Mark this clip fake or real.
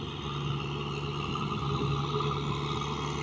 real